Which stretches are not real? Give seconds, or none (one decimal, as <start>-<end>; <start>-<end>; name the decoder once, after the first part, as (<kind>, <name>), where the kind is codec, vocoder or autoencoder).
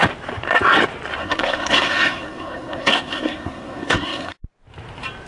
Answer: 1.2-4.4 (codec, SNAC)